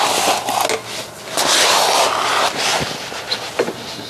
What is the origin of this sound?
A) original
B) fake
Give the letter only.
A